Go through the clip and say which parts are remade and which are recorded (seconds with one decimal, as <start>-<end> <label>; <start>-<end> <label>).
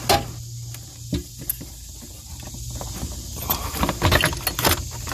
0.0-5.1 recorded